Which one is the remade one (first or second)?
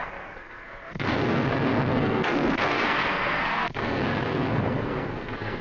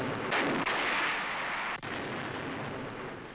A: first